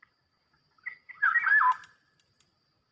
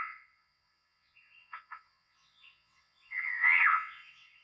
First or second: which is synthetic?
second